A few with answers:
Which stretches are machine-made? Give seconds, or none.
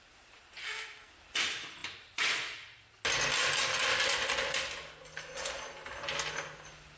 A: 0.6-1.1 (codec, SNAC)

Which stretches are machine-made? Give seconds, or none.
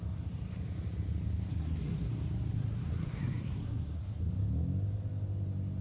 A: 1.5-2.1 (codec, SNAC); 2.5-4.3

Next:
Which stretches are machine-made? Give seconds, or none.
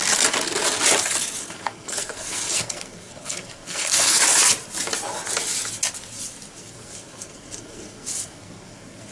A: 1.4-4.2 (codec, SNAC); 6.6-9.1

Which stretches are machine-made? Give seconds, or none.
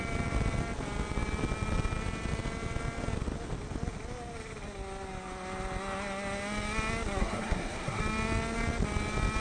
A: 7.2-8.0 (codec, SNAC)